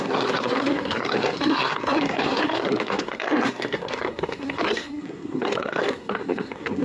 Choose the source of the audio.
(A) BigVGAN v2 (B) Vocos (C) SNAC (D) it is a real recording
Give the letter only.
C